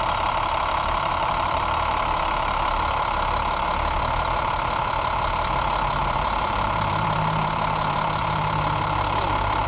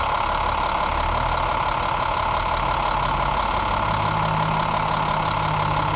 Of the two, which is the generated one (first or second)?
first